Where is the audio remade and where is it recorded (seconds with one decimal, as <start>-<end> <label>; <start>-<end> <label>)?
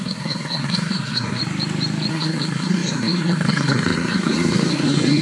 0.0-1.4 remade; 1.4-2.1 recorded; 2.1-5.2 remade